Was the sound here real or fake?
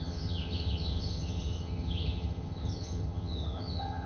fake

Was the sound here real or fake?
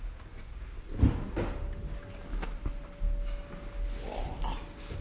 real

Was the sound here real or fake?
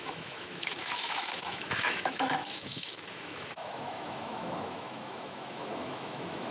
fake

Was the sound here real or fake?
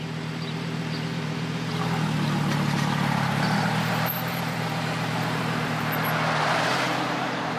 fake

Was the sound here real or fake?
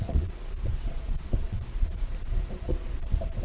fake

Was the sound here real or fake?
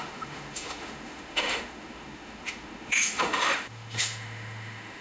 fake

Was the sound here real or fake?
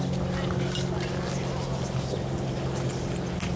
fake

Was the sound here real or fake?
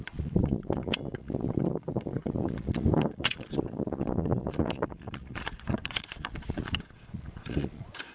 fake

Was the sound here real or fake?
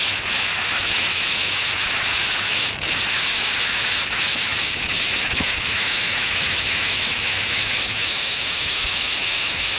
fake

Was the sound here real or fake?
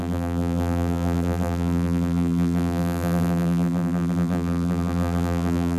fake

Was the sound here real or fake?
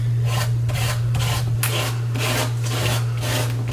real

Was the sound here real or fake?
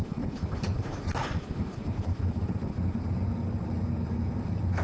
real